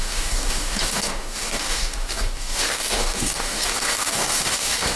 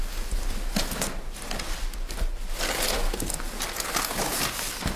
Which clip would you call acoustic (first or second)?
second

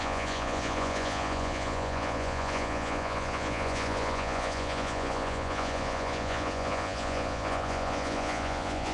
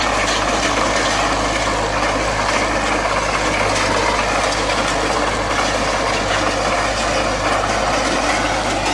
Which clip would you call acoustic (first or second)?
second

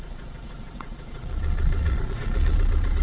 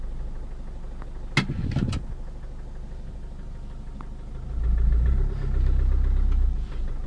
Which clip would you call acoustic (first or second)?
second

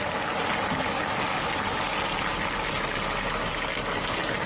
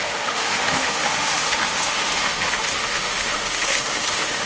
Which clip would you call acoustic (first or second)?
first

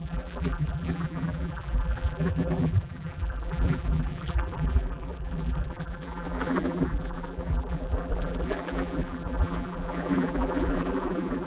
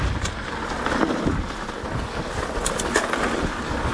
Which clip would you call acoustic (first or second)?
second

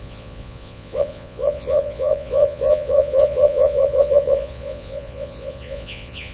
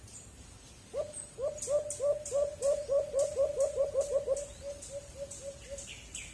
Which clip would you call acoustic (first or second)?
second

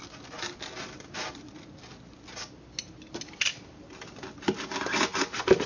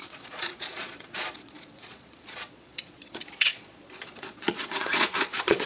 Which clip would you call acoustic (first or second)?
first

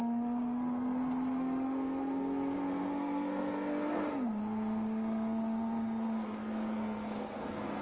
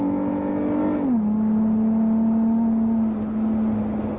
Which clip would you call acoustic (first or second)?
second